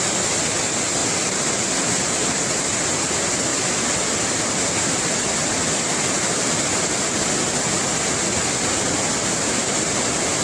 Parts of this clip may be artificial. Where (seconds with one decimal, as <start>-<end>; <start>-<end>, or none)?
none